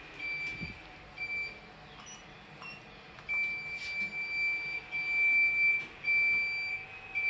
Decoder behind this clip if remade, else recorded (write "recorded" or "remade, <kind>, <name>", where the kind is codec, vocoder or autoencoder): recorded